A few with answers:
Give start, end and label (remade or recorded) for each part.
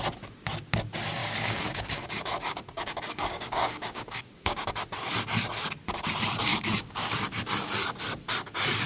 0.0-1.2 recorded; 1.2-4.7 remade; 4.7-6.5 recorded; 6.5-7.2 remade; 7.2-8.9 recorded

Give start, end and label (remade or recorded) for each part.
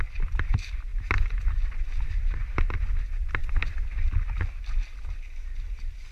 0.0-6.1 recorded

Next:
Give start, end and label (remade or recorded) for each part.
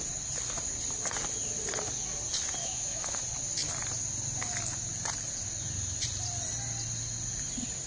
0.0-2.6 recorded; 2.6-3.2 remade; 3.2-7.9 recorded